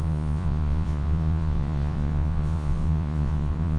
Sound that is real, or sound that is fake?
fake